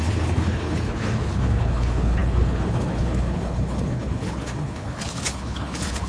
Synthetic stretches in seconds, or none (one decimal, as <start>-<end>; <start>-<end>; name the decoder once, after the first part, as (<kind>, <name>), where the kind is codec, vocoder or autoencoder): 0.0-6.1 (codec, HILCodec)